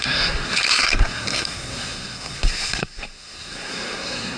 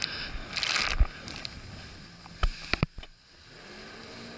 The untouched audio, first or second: second